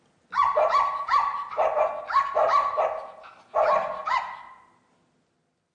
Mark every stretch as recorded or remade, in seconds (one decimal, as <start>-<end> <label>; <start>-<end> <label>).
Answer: 0.0-5.7 recorded